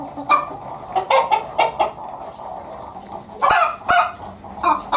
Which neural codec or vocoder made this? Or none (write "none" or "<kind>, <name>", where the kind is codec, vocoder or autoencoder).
none